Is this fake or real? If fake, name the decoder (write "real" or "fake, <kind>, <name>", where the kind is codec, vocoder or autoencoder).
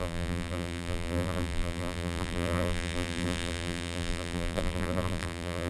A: fake, vocoder, BigVGAN v2